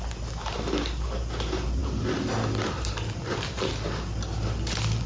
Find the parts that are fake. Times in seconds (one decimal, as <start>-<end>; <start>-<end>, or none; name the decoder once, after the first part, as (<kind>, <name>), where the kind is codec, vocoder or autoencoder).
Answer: none